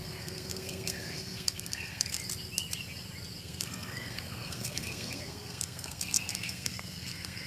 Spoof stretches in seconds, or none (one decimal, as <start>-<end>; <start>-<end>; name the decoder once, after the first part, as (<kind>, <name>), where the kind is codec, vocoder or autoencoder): 0.0-2.2 (codec, SNAC); 3.4-7.5

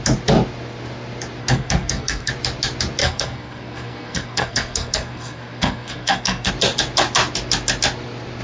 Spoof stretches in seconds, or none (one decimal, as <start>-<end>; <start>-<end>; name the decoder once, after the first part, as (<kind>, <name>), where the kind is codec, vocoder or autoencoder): 1.4-2.3 (codec, SNAC); 3.0-6.5

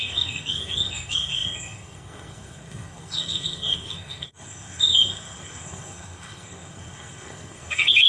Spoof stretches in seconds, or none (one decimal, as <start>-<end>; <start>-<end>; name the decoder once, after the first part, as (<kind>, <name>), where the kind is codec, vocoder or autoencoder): 0.0-8.1 (codec, SNAC)